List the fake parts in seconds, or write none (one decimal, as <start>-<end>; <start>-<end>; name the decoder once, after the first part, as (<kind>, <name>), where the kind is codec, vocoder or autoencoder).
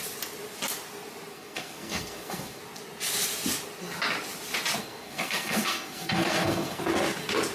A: 1.3-2.6 (codec, SNAC); 4.8-6.8